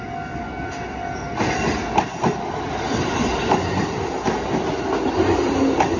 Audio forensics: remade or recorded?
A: recorded